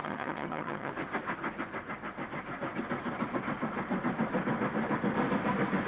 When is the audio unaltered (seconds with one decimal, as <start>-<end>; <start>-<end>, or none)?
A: 0.9-5.9